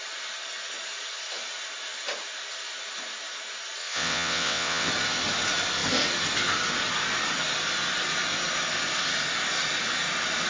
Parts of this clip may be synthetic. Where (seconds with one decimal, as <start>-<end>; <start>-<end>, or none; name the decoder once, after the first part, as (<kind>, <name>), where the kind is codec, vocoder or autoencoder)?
3.8-4.9 (vocoder, WaveNeXt)